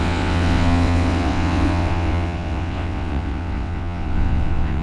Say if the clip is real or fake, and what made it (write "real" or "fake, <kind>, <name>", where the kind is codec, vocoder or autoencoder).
fake, vocoder, WaveNeXt